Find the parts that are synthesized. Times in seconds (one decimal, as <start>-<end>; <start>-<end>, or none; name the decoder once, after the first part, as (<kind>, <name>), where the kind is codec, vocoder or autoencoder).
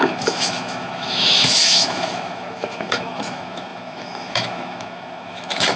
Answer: 0.0-5.8 (autoencoder, DAC-VAE)